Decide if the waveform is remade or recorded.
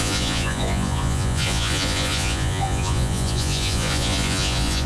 remade